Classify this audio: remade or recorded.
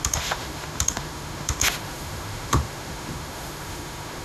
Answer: remade